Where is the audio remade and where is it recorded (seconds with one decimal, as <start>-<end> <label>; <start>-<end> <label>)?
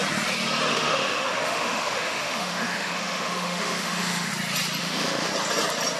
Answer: 0.0-0.7 recorded; 0.7-4.3 remade; 4.3-4.8 recorded; 4.8-5.3 remade; 5.3-6.0 recorded